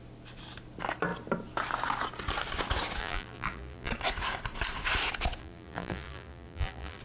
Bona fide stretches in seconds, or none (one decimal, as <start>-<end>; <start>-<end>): 0.0-3.0; 3.9-5.4